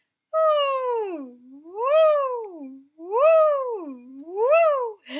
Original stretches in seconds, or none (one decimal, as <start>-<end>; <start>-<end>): 0.0-5.2